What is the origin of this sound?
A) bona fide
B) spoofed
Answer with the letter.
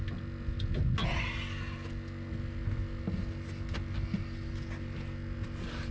A